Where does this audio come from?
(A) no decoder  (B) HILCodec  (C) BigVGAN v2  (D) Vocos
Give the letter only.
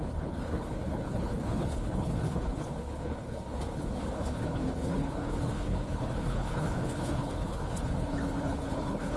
B